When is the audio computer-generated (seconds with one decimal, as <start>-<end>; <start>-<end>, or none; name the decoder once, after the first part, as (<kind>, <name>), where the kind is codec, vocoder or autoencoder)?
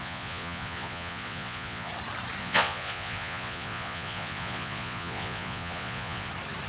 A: 0.0-1.9 (vocoder, Vocos); 2.4-6.3